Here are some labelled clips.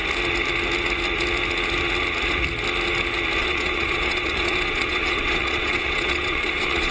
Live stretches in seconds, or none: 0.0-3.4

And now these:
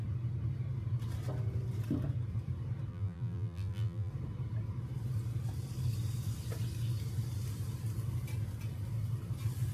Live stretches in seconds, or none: 0.0-2.9; 4.1-9.7

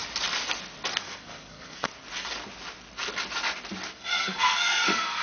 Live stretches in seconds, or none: 0.0-1.0; 1.9-3.9

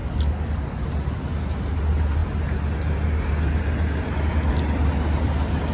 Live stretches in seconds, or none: 0.9-5.7